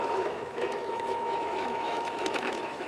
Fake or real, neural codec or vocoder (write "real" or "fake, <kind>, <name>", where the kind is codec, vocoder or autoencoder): fake, autoencoder, DAC-VAE